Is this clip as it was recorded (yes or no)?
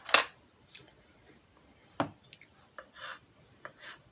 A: yes